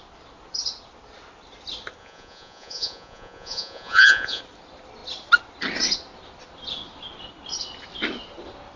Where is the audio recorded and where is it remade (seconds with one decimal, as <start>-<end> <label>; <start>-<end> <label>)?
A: 0.0-2.0 recorded; 2.0-4.4 remade; 4.4-8.8 recorded